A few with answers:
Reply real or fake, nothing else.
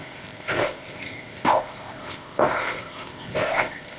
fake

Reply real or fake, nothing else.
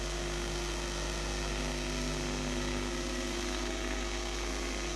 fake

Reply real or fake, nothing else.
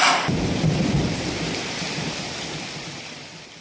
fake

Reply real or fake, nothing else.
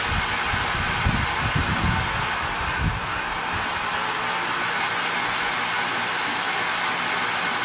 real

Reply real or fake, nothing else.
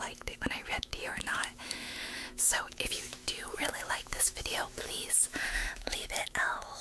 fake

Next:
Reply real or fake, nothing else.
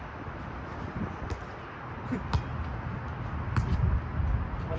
real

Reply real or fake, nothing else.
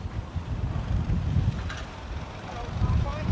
real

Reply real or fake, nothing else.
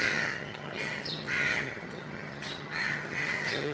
fake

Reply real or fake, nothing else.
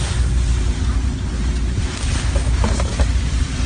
real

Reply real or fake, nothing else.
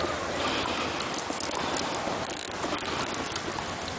real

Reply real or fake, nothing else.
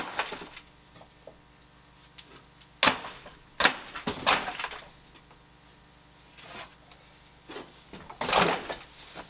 real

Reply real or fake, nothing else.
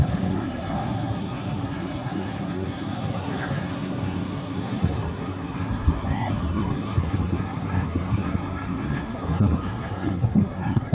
fake